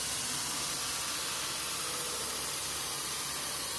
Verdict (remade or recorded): recorded